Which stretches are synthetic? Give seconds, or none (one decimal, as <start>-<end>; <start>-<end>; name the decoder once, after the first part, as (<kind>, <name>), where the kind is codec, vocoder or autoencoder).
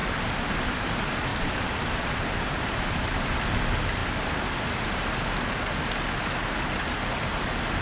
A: 0.0-0.9 (vocoder, BigVGAN v2); 1.3-3.0